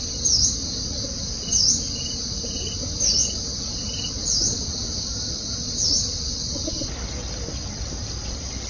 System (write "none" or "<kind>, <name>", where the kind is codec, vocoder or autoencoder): none